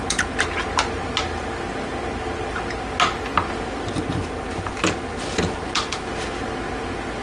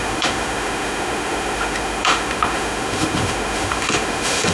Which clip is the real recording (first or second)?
first